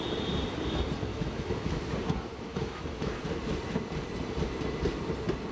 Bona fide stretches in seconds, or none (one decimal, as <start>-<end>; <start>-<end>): 0.0-1.1; 1.8-2.5; 3.1-5.5